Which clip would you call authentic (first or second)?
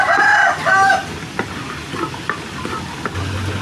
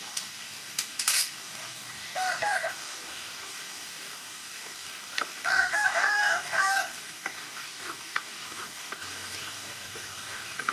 first